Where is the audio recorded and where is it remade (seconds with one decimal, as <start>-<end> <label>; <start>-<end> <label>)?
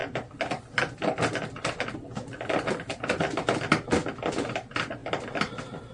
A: 0.0-5.9 recorded